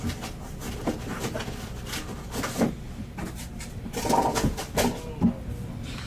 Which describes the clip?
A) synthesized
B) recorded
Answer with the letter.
B